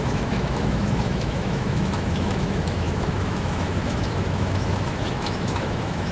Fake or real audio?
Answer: fake